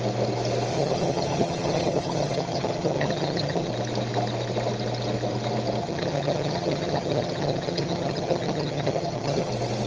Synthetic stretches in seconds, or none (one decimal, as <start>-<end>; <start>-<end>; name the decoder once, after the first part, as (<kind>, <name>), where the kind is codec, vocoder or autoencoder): 0.7-3.7 (vocoder, HiFi-GAN); 5.8-9.5